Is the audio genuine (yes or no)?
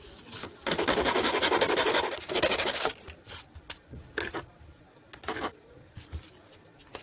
yes